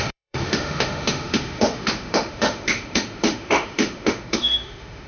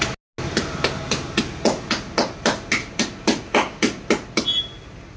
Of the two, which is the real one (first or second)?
second